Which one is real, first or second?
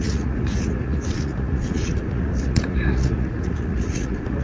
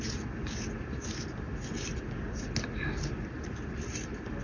second